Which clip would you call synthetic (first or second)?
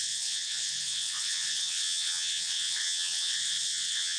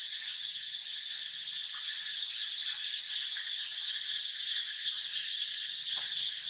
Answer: first